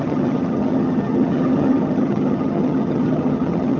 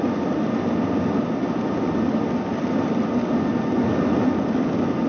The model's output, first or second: first